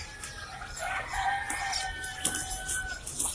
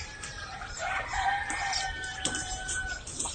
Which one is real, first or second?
first